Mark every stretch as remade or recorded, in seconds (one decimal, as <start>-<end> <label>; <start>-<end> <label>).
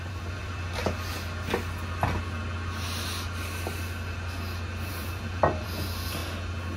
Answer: 0.0-0.8 remade; 0.8-4.9 recorded; 4.9-6.2 remade; 6.2-6.8 recorded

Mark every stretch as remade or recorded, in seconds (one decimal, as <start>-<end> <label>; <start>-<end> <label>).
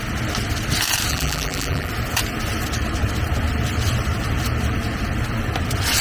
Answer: 0.0-1.1 recorded; 1.1-1.9 remade; 1.9-6.0 recorded